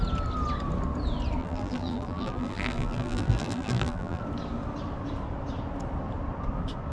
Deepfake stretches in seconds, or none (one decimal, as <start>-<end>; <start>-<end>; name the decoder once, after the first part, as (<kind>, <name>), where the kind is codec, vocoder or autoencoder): 1.4-4.2 (vocoder, BigVGAN v2)